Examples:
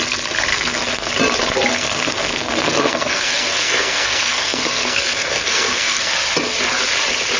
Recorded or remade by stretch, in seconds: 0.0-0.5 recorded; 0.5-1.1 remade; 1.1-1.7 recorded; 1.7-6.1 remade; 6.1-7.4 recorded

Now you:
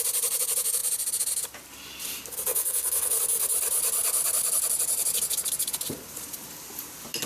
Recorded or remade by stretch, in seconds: 0.0-2.5 recorded; 2.5-3.2 remade; 3.2-7.3 recorded

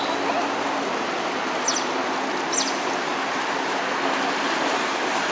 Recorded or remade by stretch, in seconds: 0.0-5.3 recorded

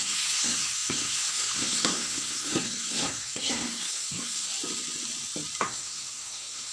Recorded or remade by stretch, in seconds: 0.0-4.5 remade; 4.5-5.6 recorded; 5.6-6.7 remade

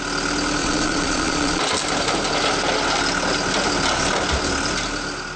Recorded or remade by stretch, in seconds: 0.0-0.6 recorded; 0.6-1.6 remade; 1.6-5.4 recorded

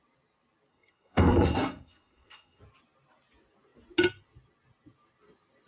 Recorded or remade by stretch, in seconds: 0.0-0.7 recorded; 0.7-2.6 remade; 2.6-5.7 recorded

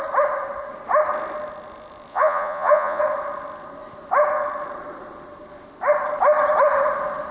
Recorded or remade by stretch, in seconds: 0.0-2.1 recorded; 2.1-3.0 remade; 3.0-7.3 recorded